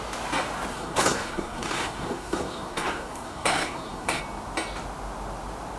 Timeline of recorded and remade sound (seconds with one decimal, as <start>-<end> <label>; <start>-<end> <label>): 0.0-0.7 recorded; 0.7-4.2 remade; 4.2-5.8 recorded

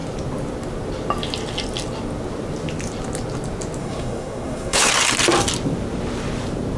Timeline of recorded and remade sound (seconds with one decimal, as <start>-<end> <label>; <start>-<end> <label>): 0.0-3.8 recorded; 3.8-4.9 remade; 4.9-6.8 recorded

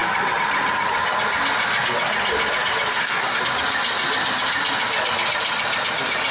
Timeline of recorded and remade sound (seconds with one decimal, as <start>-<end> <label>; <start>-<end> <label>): 0.0-2.9 recorded; 2.9-3.4 remade; 3.4-6.3 recorded

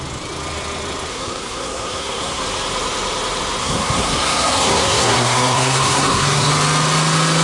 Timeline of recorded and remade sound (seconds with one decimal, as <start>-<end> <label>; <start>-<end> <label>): 0.0-1.1 recorded; 1.1-2.4 remade; 2.4-3.6 recorded; 3.6-6.5 remade; 6.5-7.4 recorded

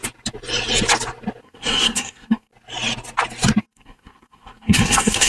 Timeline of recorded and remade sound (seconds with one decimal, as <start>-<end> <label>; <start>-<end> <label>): 0.0-1.4 recorded; 1.4-2.5 remade; 2.5-3.6 recorded; 3.6-5.3 remade

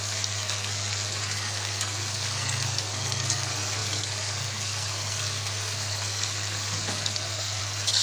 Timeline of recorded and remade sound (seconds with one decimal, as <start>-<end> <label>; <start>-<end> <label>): 0.0-8.0 remade